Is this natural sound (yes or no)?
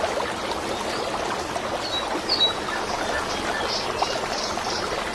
yes